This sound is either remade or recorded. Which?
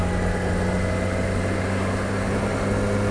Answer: recorded